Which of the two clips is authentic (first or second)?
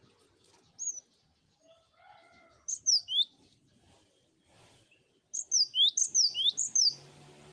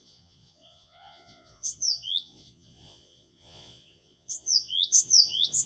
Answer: first